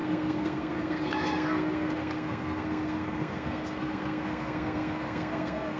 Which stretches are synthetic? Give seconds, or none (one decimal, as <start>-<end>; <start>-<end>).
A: 0.0-5.8